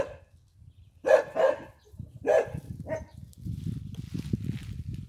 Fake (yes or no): no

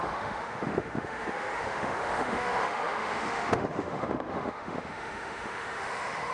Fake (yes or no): yes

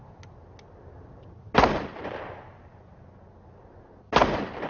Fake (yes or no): no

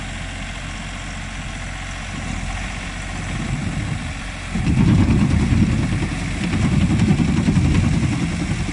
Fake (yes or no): no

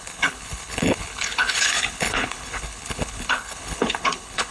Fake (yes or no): yes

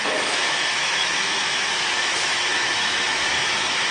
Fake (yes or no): yes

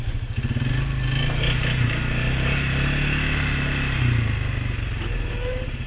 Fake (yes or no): no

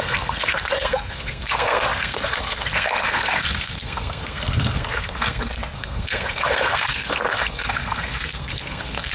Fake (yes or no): yes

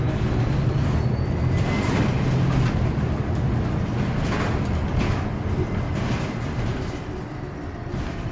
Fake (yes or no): no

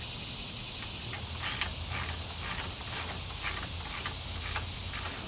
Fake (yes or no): no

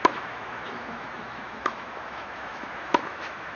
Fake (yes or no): yes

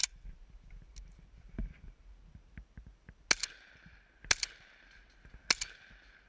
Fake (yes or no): no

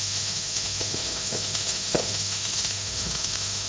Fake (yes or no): yes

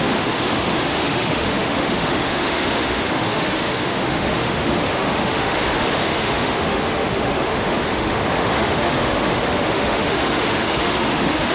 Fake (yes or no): yes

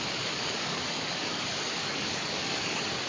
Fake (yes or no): yes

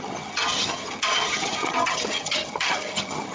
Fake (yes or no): yes